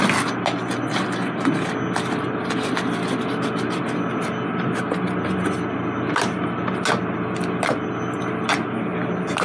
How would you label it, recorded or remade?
recorded